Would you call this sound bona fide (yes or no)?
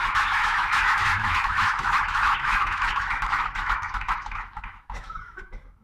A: no